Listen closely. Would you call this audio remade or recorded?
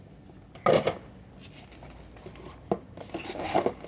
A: recorded